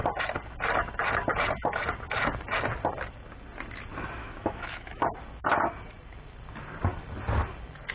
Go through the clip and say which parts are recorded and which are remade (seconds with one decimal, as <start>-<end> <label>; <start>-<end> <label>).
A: 0.0-4.2 recorded; 4.2-5.0 remade; 5.0-7.9 recorded